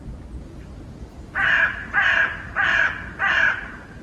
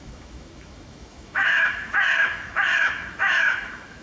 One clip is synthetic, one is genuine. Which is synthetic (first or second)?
second